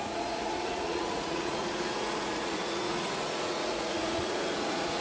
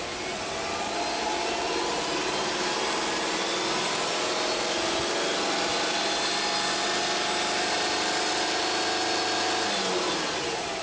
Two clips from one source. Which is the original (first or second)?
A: second